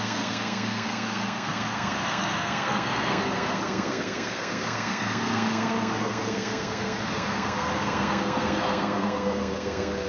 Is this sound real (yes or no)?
no